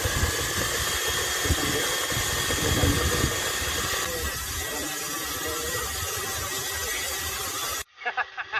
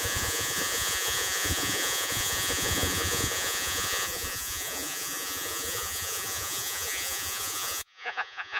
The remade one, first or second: second